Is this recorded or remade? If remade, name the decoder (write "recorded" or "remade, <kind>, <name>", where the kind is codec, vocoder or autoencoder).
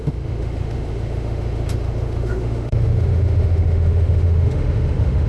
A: remade, autoencoder, DAC-VAE